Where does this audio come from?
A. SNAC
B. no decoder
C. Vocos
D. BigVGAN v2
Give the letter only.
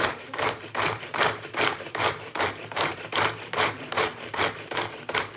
D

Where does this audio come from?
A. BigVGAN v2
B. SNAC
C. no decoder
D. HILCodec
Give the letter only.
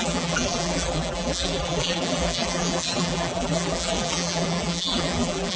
A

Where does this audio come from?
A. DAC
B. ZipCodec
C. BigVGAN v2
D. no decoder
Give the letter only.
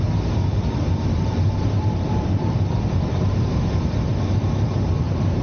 C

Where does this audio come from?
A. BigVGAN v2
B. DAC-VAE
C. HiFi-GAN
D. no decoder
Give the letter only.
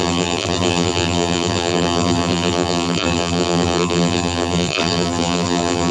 A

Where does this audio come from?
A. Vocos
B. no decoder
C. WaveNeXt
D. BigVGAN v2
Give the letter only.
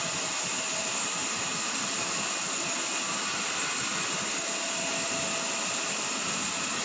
B